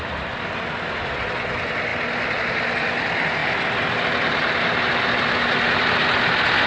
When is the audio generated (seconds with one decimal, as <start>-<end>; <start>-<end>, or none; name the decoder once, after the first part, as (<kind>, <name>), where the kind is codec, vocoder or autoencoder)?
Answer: none